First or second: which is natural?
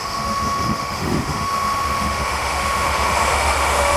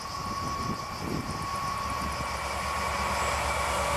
second